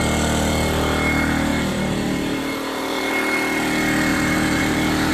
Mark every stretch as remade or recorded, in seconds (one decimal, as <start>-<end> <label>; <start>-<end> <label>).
0.0-1.5 recorded; 1.5-3.1 remade; 3.1-4.1 recorded; 4.1-5.1 remade